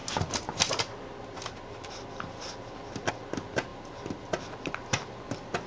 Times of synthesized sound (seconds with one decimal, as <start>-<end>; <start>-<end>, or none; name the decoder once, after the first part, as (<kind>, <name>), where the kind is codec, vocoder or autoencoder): none